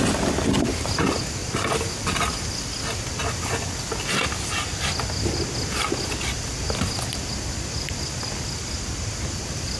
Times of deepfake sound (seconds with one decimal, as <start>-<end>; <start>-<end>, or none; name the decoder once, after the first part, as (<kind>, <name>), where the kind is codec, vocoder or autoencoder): none